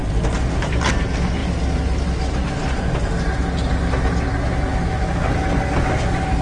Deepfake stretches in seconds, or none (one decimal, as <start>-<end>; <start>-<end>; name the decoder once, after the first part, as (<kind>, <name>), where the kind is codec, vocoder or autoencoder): 4.7-5.3 (autoencoder, DAC-VAE)